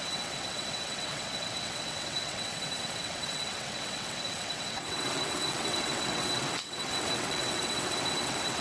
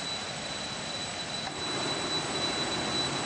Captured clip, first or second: second